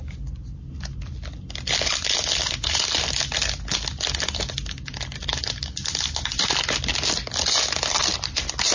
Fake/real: real